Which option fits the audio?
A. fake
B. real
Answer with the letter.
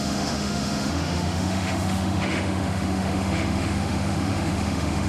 A